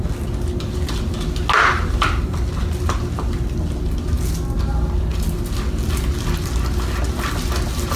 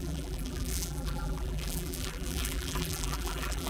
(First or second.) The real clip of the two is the first